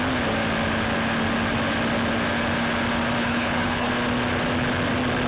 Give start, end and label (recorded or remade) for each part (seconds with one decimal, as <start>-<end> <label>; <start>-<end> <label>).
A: 0.0-3.2 recorded; 3.2-3.9 remade; 3.9-5.3 recorded